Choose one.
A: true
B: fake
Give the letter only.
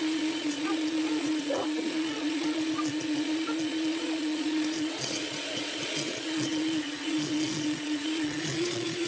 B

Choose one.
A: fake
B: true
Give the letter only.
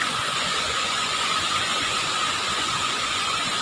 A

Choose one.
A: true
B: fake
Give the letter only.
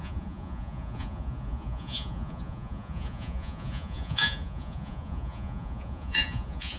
B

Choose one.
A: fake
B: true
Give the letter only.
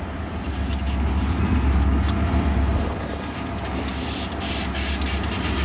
B